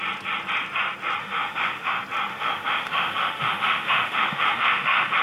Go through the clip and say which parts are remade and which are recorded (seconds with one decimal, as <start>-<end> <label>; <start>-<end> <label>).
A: 0.0-1.2 recorded; 1.2-1.9 remade; 1.9-2.3 recorded; 2.3-5.2 remade